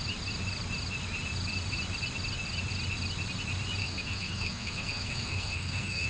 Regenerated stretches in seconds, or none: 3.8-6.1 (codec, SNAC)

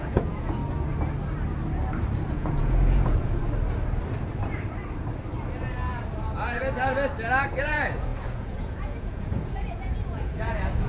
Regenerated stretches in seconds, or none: 0.0-0.6 (vocoder, Vocos); 2.3-3.4; 7.6-10.9

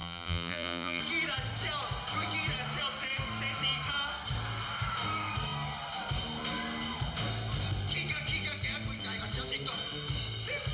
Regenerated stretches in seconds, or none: 0.0-1.0 (vocoder, BigVGAN v2)

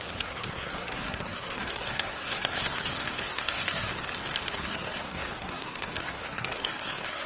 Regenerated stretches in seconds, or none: 0.0-3.9 (codec, SNAC); 4.5-7.3

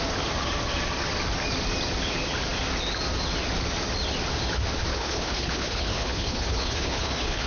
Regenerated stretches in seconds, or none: 4.9-7.5 (codec, HILCodec)

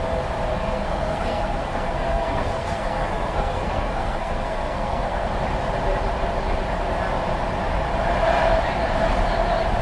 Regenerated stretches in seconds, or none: 0.5-5.3 (codec, SNAC)

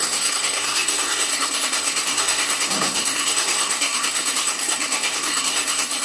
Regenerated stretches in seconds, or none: 0.0-6.0 (codec, SNAC)